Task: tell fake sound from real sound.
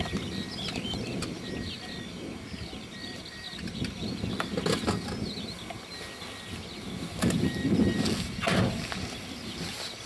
real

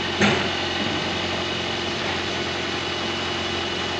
real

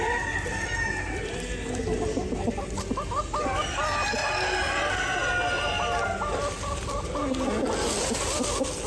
real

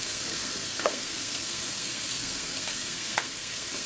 fake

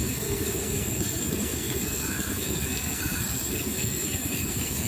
fake